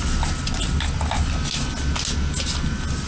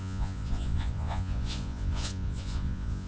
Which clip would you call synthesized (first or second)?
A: second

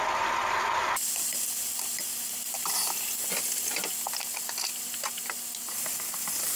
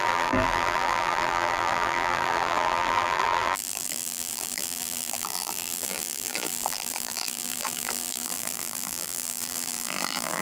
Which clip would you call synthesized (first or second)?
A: second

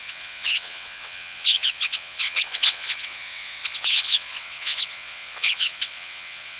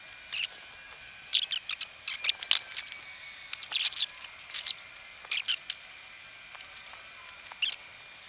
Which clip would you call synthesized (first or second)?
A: first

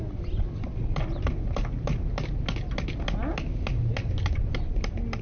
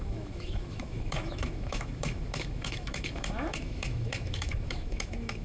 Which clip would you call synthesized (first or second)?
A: second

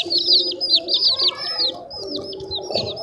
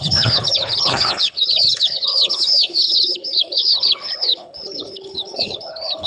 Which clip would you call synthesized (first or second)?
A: second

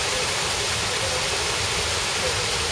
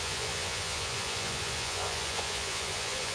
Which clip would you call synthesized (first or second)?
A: second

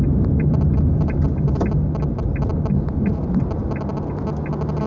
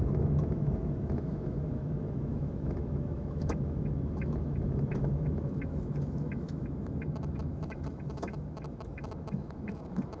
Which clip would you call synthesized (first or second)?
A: second